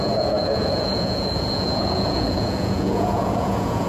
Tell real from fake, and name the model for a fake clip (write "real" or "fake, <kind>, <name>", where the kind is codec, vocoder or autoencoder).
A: fake, vocoder, Vocos